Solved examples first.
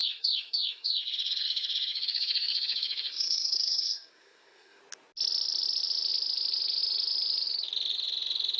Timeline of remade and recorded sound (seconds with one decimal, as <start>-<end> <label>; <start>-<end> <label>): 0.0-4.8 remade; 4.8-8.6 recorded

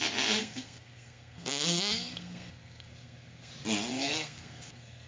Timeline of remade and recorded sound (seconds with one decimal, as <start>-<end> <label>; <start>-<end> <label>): 0.0-0.4 recorded; 0.4-3.5 remade; 3.5-3.9 recorded; 3.9-5.1 remade

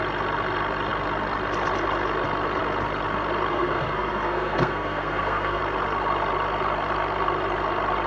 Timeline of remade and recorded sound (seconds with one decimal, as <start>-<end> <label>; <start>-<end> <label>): 0.0-3.5 recorded; 3.5-5.6 remade; 5.6-8.1 recorded

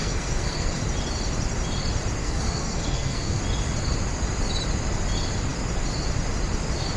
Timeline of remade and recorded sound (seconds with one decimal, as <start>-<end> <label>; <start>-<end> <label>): 0.0-0.8 remade; 0.8-2.2 recorded; 2.2-3.4 remade; 3.4-7.0 recorded

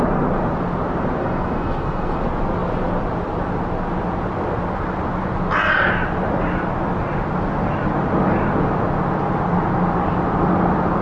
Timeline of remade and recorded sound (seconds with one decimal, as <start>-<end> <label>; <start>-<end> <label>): 0.0-1.2 recorded; 1.2-2.2 remade; 2.2-11.0 recorded